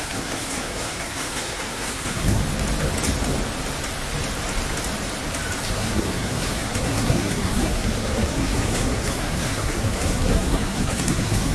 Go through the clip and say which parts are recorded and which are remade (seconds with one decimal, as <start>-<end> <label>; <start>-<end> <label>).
0.0-2.4 remade; 2.4-5.7 recorded; 5.7-11.5 remade